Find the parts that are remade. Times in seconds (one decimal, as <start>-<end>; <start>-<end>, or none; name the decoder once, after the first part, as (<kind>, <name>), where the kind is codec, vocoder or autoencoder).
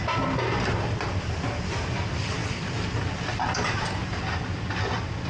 none